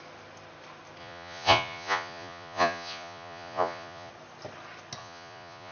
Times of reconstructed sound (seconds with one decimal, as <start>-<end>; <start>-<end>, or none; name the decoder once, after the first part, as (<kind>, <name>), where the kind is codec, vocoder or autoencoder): 1.0-4.1 (vocoder, Vocos); 5.0-5.7